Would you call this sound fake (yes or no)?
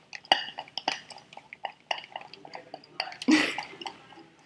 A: no